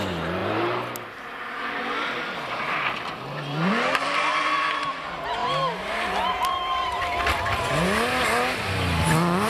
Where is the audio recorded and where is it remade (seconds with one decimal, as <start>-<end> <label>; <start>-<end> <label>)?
0.0-5.4 recorded; 5.4-7.0 remade; 7.0-9.5 recorded